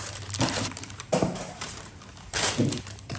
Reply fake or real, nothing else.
fake